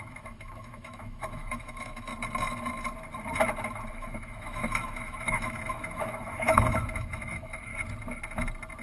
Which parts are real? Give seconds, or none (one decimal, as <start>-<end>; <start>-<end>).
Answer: 2.1-3.9; 7.7-8.8